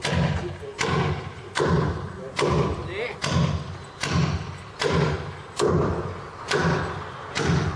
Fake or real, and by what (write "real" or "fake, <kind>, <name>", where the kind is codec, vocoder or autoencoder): real